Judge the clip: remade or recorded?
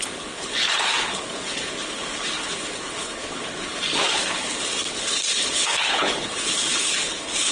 remade